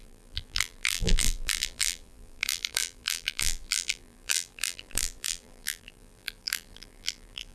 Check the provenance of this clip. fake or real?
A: fake